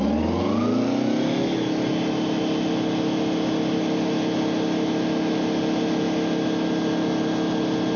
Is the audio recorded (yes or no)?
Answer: yes